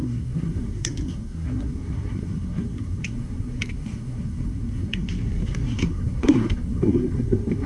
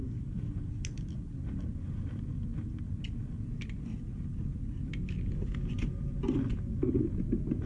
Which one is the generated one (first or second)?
first